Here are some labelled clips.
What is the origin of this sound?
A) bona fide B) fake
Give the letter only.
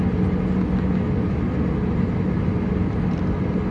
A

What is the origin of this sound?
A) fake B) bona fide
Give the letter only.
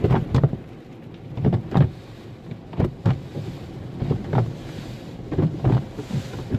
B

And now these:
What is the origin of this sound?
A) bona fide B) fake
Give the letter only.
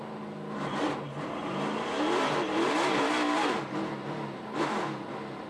A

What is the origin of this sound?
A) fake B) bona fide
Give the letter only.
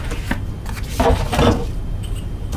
B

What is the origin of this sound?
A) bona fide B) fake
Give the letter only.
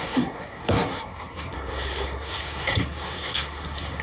B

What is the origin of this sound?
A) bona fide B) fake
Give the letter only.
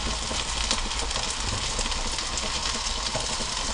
A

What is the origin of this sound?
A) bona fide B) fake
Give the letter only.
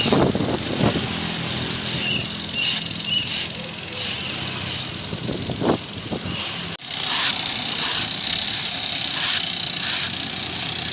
A